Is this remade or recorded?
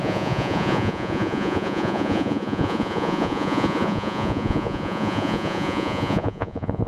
remade